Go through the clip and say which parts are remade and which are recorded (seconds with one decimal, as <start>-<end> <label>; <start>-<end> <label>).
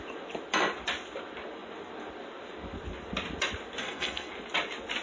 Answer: 0.0-3.8 recorded; 3.8-4.3 remade; 4.3-5.0 recorded